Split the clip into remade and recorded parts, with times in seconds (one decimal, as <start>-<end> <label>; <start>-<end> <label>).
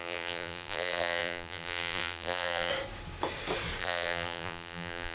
0.0-2.7 remade; 2.7-3.8 recorded; 3.8-5.1 remade